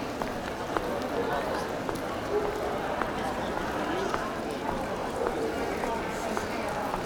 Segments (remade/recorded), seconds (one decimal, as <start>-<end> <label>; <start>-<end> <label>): 0.0-7.1 recorded